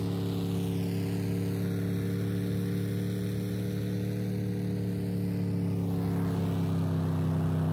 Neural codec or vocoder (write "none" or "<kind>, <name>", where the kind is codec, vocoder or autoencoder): none